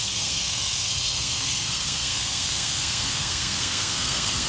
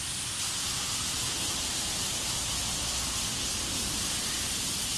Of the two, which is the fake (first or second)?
first